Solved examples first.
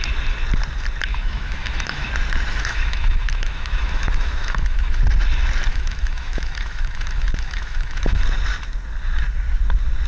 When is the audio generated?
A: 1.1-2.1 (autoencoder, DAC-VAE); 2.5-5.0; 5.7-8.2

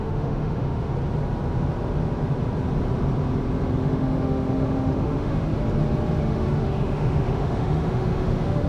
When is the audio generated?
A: 0.0-0.9 (autoencoder, DAC-VAE); 3.8-5.5; 6.2-8.7

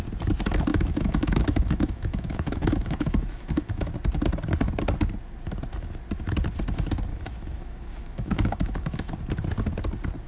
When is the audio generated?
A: 0.7-3.9 (autoencoder, DAC-VAE); 7.1-9.1

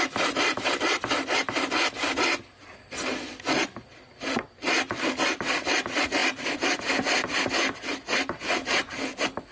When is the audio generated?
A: none

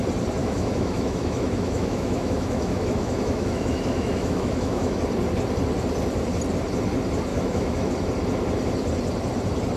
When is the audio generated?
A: 0.4-5.0 (autoencoder, DAC-VAE); 7.3-7.9